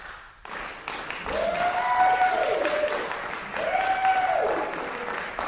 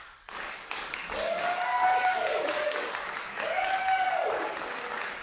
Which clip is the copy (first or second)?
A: second